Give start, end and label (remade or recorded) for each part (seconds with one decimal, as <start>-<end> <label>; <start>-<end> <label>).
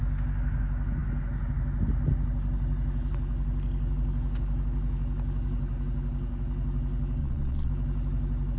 0.0-7.2 recorded; 7.2-7.7 remade; 7.7-8.6 recorded